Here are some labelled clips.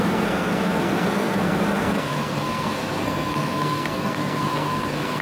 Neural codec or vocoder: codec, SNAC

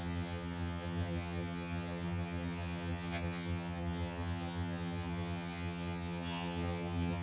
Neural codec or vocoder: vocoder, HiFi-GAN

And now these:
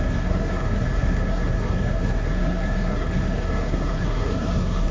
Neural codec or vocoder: codec, SNAC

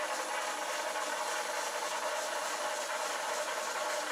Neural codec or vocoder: none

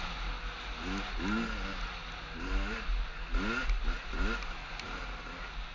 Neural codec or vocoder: none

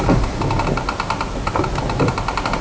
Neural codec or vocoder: none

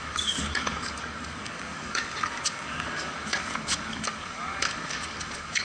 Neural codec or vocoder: codec, DAC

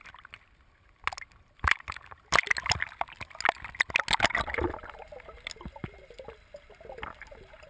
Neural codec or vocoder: none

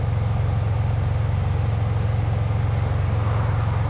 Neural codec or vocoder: none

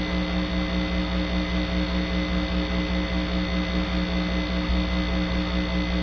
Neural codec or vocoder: none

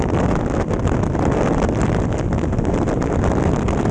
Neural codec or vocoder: none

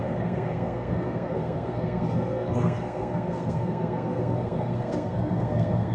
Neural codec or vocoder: codec, SNAC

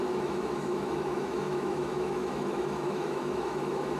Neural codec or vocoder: autoencoder, DAC-VAE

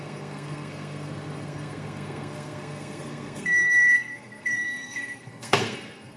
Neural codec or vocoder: codec, SNAC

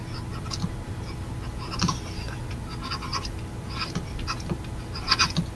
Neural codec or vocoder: none